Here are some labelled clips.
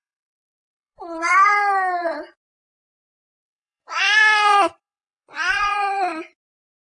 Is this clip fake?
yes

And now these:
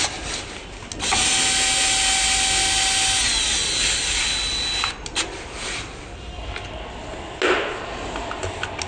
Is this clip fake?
no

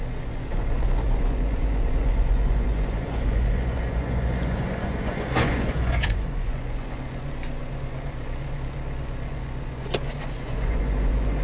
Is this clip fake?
yes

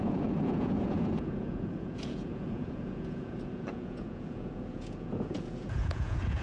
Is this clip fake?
yes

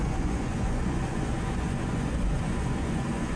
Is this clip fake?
yes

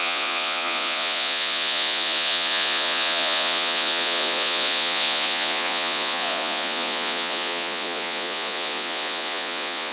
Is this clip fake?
yes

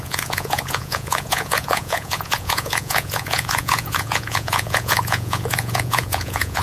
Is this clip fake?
yes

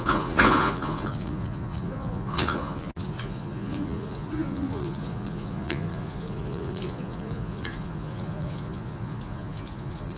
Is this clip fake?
yes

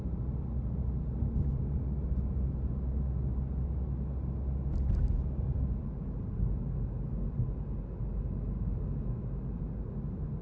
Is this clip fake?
no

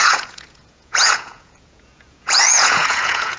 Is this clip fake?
yes